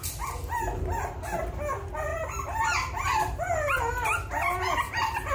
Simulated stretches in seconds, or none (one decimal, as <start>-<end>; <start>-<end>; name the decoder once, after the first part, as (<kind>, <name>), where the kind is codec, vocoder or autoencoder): none